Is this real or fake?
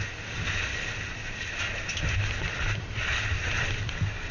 real